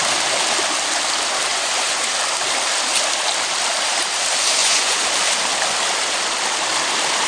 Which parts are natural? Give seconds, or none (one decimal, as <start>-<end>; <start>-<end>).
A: 0.0-1.5; 2.0-4.6; 5.1-7.3